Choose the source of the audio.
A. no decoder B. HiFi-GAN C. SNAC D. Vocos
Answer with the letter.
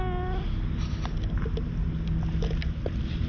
A